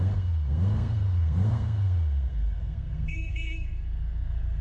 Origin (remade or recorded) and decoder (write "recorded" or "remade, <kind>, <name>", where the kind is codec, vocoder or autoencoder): remade, codec, SNAC